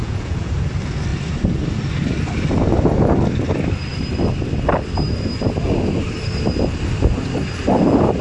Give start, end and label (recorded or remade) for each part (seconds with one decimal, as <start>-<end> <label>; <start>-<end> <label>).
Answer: 0.0-0.5 remade; 0.5-8.2 recorded